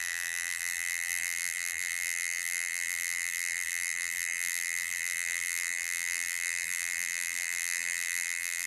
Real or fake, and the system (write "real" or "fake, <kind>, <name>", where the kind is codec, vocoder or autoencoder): fake, vocoder, BigVGAN v2